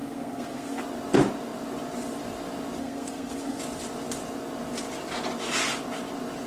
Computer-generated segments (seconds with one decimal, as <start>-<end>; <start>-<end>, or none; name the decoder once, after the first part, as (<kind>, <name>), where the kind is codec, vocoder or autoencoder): 0.0-0.8 (codec, SNAC); 2.8-3.6